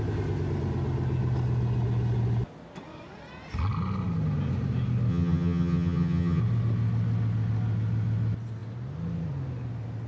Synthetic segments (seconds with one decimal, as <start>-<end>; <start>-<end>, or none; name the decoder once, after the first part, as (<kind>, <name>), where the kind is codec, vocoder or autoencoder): 5.1-6.4 (vocoder, HiFi-GAN)